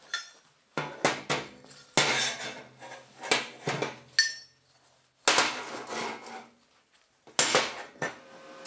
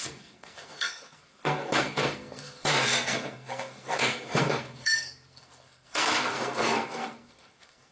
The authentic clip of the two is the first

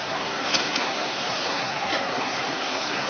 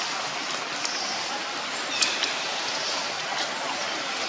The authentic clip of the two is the second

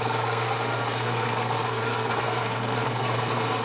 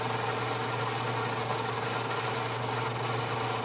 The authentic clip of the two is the second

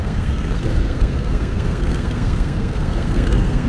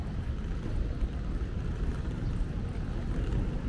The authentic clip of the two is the second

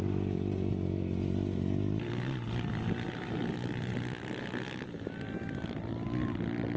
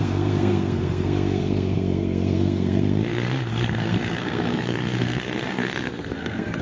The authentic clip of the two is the first